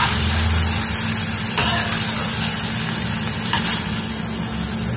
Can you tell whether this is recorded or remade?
recorded